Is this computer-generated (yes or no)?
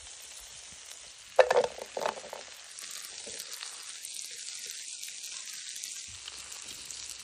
no